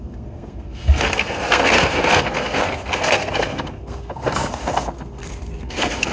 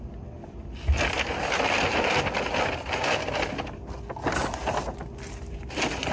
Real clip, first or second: second